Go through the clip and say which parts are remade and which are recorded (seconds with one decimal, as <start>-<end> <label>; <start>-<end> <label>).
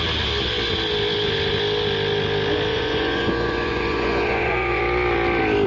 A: 0.0-2.7 recorded; 2.7-4.8 remade; 4.8-5.7 recorded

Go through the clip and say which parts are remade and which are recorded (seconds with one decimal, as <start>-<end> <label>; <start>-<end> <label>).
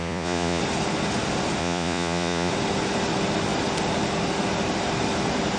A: 0.0-0.6 remade; 0.6-1.6 recorded; 1.6-2.5 remade; 2.5-5.6 recorded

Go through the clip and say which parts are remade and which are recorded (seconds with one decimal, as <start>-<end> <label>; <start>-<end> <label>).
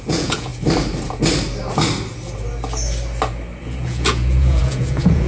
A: 0.0-0.5 remade; 0.5-3.7 recorded; 3.7-5.3 remade